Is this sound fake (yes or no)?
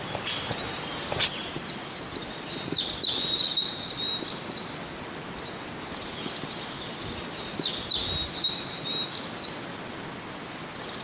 no